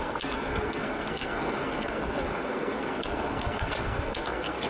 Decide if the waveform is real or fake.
fake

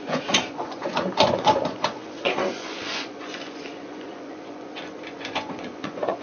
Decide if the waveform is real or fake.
fake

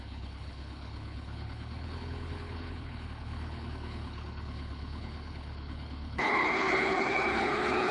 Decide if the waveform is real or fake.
fake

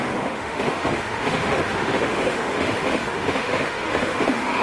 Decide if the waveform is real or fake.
fake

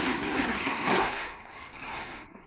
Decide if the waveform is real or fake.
fake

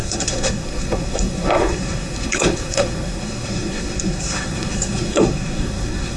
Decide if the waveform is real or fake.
fake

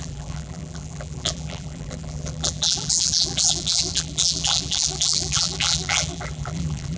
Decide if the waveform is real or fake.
fake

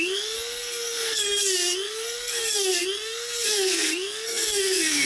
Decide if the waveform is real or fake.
fake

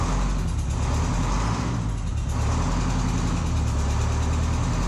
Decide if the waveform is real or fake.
real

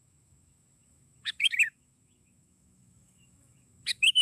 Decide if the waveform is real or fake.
fake